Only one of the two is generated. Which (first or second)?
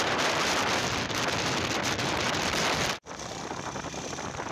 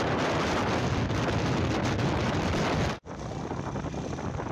first